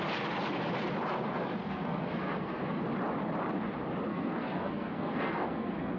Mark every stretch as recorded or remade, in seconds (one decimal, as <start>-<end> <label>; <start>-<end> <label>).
0.0-1.6 recorded; 1.6-2.8 remade; 2.8-4.1 recorded; 4.1-6.0 remade